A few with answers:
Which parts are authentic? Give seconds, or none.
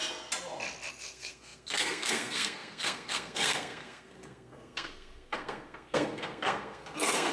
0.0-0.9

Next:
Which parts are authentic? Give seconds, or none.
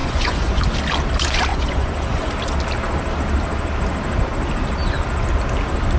0.6-1.5; 2.3-6.0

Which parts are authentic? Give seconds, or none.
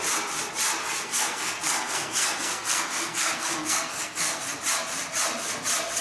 0.0-0.8; 4.4-6.0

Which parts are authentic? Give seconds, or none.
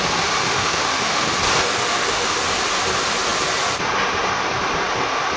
0.0-0.4; 1.3-1.8; 2.4-5.4